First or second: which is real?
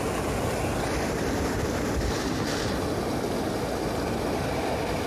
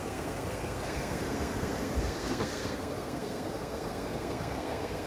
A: first